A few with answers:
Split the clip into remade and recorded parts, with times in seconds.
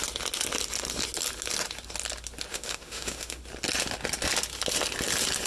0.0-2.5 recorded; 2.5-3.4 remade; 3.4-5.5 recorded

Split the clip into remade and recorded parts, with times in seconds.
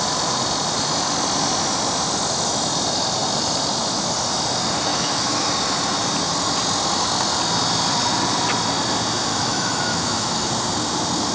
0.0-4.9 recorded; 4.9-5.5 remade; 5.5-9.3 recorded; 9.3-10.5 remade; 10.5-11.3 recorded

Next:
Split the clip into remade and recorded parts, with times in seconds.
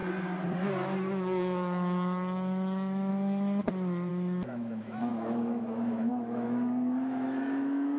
0.0-1.1 recorded; 1.1-3.1 remade; 3.1-4.1 recorded; 4.1-8.0 remade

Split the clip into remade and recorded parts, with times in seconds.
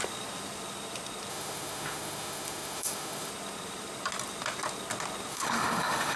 0.0-1.3 recorded; 1.3-3.3 remade; 3.3-5.3 recorded; 5.3-6.2 remade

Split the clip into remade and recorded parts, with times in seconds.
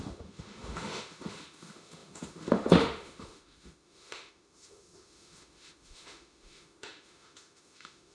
0.0-8.1 remade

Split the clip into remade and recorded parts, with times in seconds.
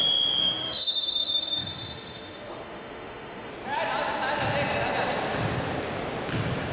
0.0-0.4 recorded; 0.4-3.5 remade; 3.5-6.7 recorded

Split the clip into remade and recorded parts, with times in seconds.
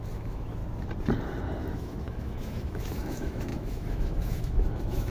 0.0-0.6 remade; 0.6-1.7 recorded; 1.7-5.1 remade